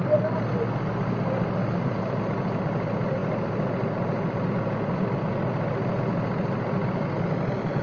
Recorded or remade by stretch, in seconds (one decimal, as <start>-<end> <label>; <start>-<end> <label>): 0.0-7.8 recorded